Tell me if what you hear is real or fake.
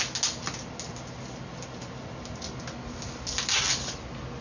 real